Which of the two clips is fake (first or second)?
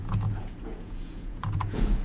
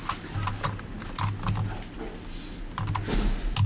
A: first